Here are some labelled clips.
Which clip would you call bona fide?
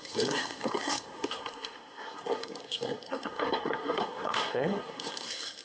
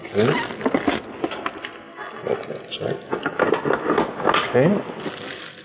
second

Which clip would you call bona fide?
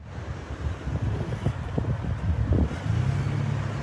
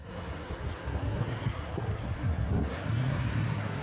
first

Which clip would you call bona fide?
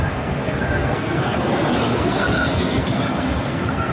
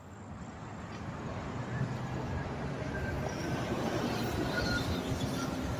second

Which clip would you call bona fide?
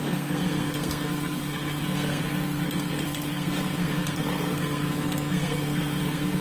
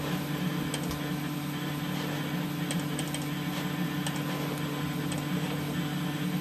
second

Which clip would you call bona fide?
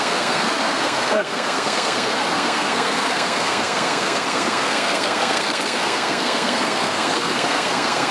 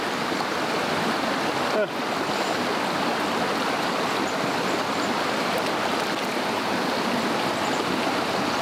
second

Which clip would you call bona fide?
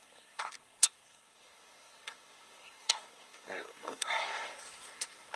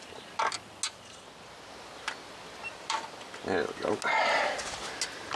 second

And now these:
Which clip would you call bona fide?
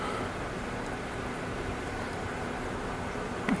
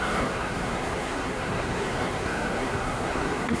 first